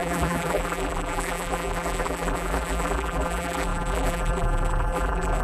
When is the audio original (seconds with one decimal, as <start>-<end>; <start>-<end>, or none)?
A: none